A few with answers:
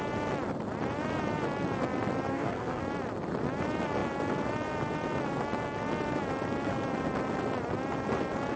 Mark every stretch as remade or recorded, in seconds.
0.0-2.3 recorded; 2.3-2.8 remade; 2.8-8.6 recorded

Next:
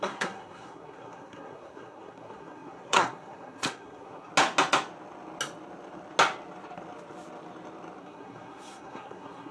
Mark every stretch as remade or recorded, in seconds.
0.0-4.3 remade; 4.3-8.0 recorded; 8.0-9.5 remade

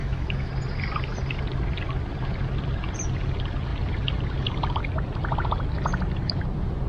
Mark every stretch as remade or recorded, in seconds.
0.0-0.5 remade; 0.5-6.9 recorded

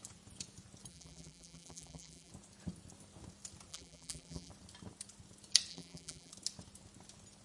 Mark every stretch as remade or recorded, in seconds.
0.0-0.9 recorded; 0.9-2.3 remade; 2.3-3.7 recorded; 3.7-4.5 remade; 4.5-5.7 recorded; 5.7-6.3 remade; 6.3-7.4 recorded

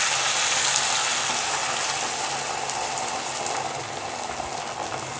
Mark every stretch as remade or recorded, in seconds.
0.0-5.2 recorded

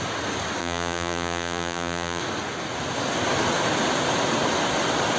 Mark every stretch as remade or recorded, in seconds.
0.0-0.6 recorded; 0.6-2.2 remade; 2.2-5.2 recorded

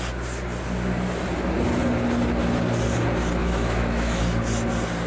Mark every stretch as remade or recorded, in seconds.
0.0-3.4 recorded; 3.4-4.2 remade; 4.2-5.1 recorded

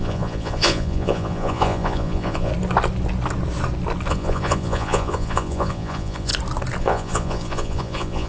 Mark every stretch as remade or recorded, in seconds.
0.0-2.5 remade; 2.5-4.1 recorded; 4.1-6.3 remade; 6.3-6.8 recorded; 6.8-8.3 remade